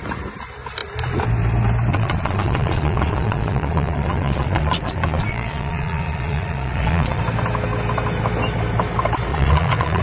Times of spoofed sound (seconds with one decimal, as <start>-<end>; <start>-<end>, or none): 1.9-7.2; 9.3-10.0

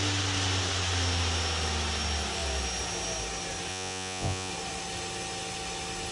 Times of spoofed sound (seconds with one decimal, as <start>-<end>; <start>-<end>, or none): 3.7-4.5

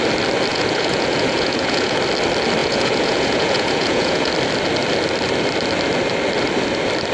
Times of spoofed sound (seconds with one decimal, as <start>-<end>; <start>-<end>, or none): 0.5-2.0; 2.6-4.3

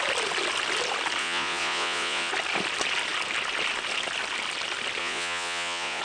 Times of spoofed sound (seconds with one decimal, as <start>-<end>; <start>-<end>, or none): 1.2-2.3; 5.0-6.0